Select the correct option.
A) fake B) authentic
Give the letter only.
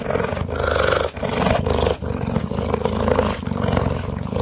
B